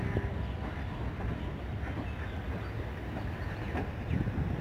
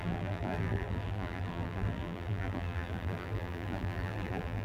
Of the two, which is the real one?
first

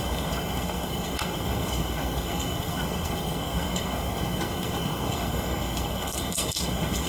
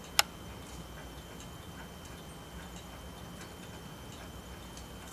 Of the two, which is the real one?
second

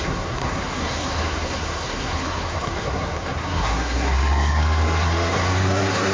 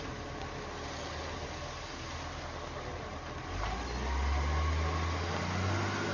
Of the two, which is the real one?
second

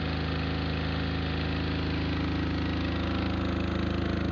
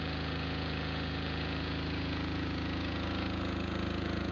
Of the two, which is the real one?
first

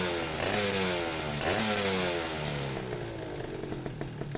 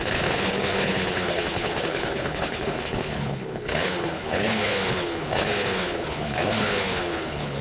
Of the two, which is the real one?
first